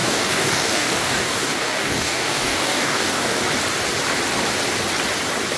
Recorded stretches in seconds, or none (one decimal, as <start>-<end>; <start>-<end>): 3.4-5.6